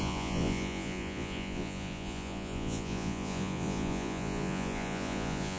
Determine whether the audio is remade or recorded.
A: remade